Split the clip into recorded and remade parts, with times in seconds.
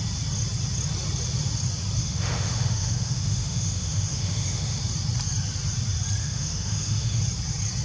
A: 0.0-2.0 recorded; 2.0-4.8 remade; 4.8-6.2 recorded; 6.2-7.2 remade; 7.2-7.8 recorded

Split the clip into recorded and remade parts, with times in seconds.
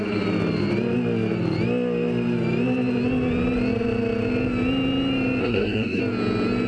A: 0.0-5.4 recorded; 5.4-6.0 remade; 6.0-6.7 recorded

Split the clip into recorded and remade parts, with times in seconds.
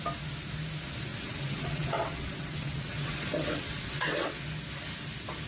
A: 0.0-1.1 recorded; 1.1-4.4 remade; 4.4-5.5 recorded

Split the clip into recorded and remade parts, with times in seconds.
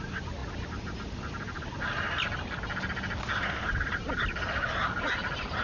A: 0.0-5.6 recorded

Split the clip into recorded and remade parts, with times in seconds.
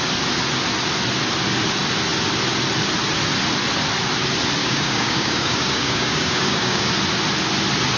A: 0.0-4.6 recorded; 4.6-6.9 remade; 6.9-8.0 recorded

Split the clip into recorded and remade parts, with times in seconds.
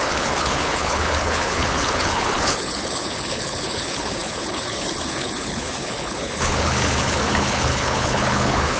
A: 0.0-8.8 remade